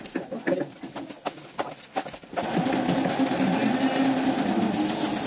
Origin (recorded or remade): recorded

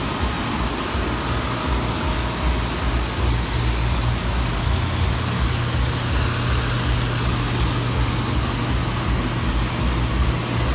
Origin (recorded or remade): recorded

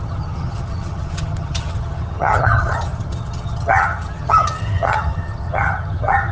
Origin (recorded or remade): remade